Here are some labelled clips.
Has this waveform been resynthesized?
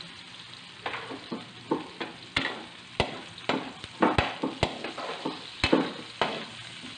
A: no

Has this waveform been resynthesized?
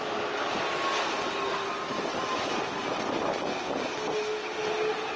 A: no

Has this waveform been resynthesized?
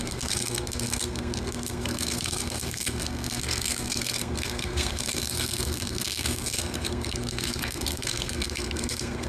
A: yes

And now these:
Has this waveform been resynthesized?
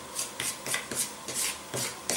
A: no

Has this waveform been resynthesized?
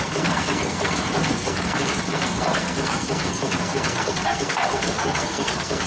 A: yes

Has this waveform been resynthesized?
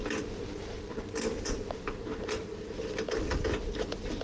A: no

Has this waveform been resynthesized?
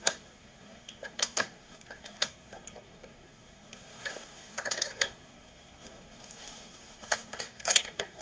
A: yes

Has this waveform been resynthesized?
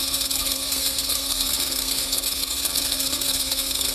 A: yes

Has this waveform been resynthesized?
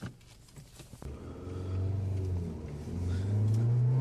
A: no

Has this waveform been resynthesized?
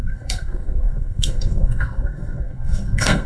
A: yes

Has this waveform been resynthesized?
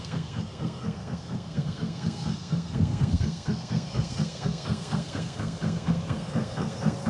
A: yes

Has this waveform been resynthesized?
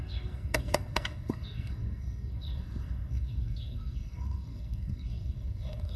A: yes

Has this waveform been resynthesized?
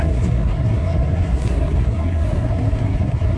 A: yes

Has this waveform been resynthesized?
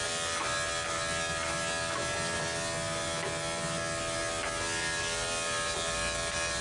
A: no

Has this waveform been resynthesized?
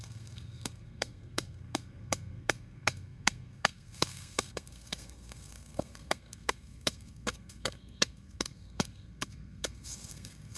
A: yes